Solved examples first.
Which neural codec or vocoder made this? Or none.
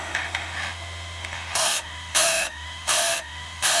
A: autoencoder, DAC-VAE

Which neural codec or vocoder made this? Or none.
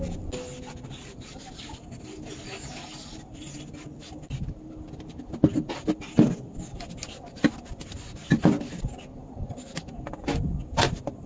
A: none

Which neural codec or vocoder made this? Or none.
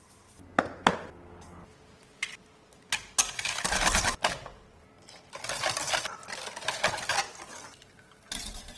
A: none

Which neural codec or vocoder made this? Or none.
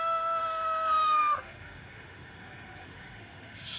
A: autoencoder, DAC-VAE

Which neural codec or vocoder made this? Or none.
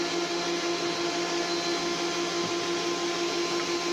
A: none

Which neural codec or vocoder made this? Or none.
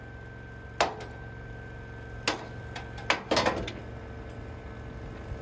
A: none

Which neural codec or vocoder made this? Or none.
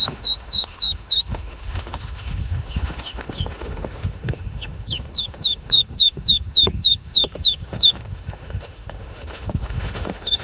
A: autoencoder, DAC-VAE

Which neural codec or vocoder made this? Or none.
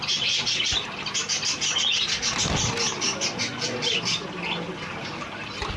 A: none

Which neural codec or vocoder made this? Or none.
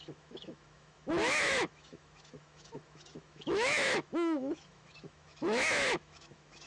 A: autoencoder, DAC-VAE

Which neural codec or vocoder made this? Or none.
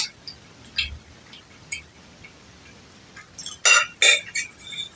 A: none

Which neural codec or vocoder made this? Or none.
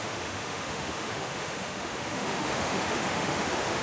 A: autoencoder, DAC-VAE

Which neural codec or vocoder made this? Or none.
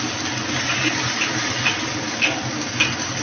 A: none